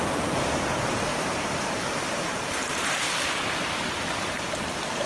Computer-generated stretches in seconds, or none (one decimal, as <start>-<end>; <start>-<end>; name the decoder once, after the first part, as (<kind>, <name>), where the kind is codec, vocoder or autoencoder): 1.1-4.2 (vocoder, BigVGAN v2)